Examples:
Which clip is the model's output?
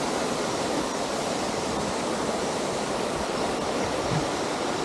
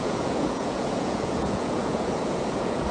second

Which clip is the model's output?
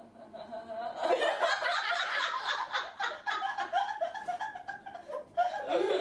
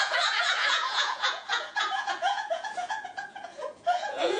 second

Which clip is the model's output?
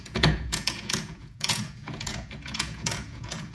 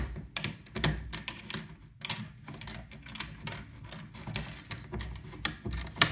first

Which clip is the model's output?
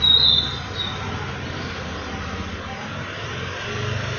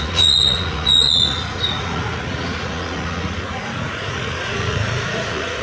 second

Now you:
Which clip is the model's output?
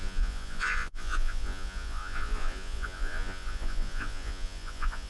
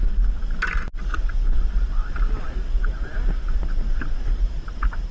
first